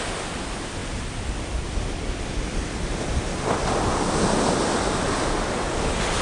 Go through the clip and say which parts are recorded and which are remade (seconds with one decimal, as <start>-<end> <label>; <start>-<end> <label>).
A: 0.0-6.2 recorded